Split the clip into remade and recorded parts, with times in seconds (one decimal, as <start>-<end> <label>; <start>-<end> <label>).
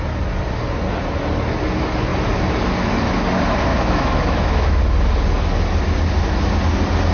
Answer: 0.0-3.7 recorded; 3.7-4.8 remade; 4.8-7.1 recorded